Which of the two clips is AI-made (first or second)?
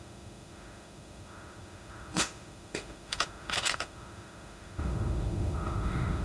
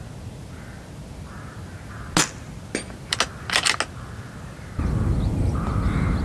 first